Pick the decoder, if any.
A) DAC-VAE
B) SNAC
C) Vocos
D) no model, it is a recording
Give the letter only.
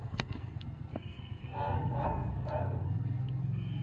B